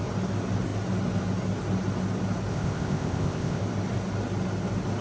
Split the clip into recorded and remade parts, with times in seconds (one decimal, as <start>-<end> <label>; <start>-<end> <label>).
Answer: 0.0-2.5 recorded; 2.5-3.6 remade; 3.6-5.0 recorded